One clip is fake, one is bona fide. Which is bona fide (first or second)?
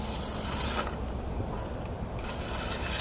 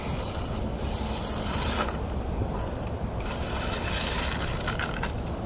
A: first